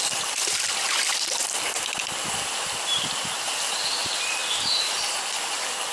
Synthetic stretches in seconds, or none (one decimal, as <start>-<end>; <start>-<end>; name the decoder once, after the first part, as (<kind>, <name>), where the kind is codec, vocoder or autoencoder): none